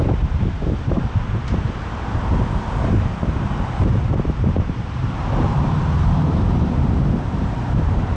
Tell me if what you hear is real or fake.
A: fake